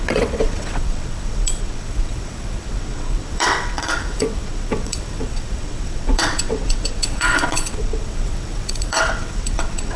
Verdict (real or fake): fake